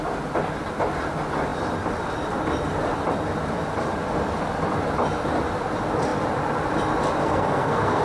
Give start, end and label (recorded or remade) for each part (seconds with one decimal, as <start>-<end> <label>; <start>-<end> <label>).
0.0-7.2 recorded; 7.2-8.0 remade